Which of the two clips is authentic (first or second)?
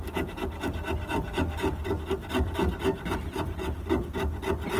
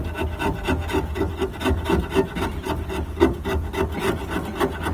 second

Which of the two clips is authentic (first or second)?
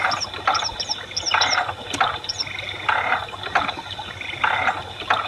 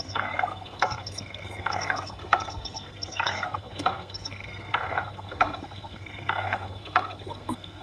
first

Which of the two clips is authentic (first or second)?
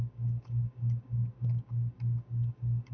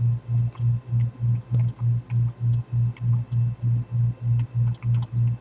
second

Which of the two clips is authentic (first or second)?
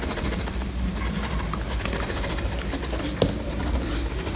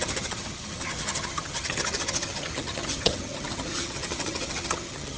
first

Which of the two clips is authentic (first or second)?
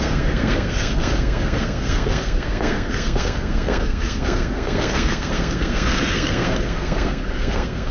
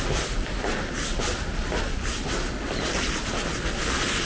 second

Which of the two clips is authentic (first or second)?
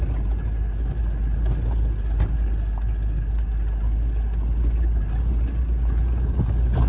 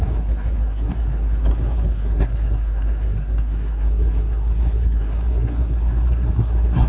first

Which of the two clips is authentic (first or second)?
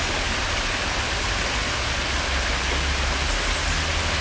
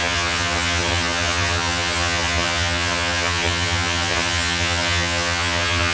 first